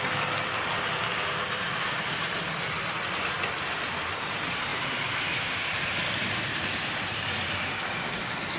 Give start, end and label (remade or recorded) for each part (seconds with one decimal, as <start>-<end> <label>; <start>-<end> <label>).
0.0-8.6 recorded